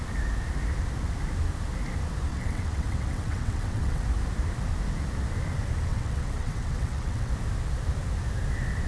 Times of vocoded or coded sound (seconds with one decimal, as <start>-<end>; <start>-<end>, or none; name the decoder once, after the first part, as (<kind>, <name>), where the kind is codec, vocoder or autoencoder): 2.3-4.0 (vocoder, WaveNeXt); 5.9-7.3